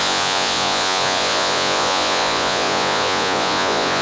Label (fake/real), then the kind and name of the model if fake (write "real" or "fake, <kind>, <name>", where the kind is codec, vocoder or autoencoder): fake, vocoder, Vocos